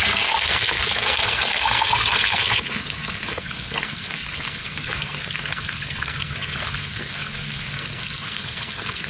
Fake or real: fake